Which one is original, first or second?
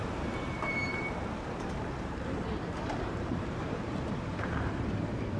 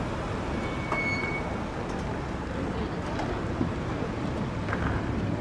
second